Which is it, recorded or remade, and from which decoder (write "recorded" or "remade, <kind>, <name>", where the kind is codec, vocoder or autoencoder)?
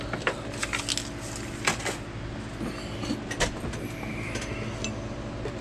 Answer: recorded